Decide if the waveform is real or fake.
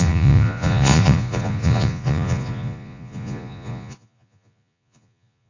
fake